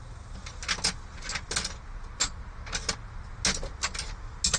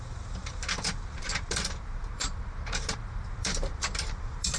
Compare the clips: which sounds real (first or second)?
first